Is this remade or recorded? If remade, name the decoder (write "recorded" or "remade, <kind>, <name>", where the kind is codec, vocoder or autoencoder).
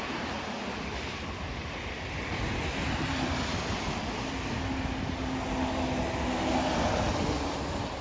recorded